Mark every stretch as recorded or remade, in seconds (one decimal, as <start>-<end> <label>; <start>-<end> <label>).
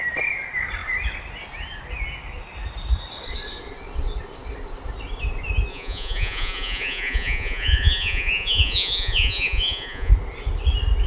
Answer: 0.0-5.7 recorded; 5.7-10.1 remade; 10.1-11.1 recorded